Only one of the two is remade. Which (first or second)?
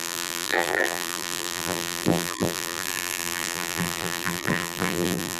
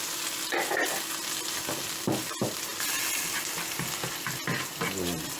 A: first